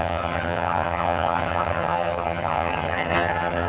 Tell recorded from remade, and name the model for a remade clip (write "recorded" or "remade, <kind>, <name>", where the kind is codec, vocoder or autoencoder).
remade, vocoder, HiFi-GAN